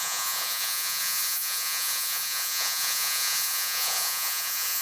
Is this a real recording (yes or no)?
no